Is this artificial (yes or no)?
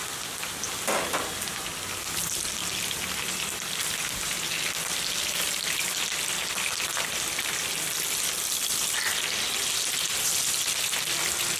no